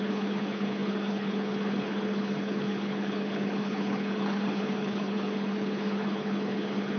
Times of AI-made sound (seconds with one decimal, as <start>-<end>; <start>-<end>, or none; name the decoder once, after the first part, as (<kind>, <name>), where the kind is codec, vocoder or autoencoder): 0.0-7.0 (codec, HILCodec)